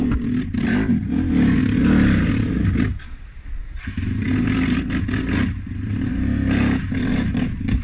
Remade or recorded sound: recorded